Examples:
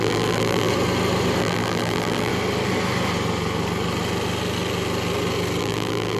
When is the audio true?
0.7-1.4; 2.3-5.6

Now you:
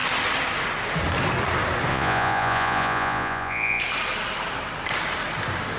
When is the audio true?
0.0-1.9; 3.8-5.8

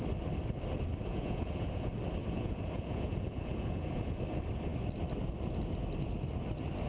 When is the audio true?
0.0-1.1; 1.8-2.2; 4.2-6.9

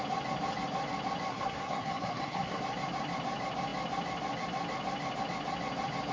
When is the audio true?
0.0-1.3; 2.6-6.1

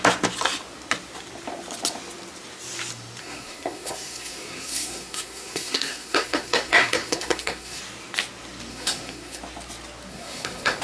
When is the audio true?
0.0-3.2; 7.8-8.7; 9.4-10.1

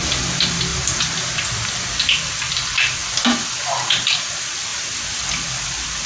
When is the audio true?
0.7-1.7

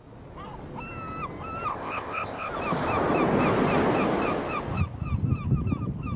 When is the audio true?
0.0-1.7; 2.5-6.2

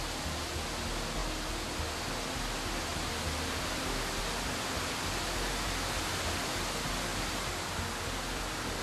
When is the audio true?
0.0-2.9; 4.2-7.1